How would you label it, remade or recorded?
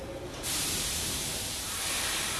remade